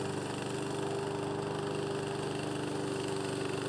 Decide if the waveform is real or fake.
real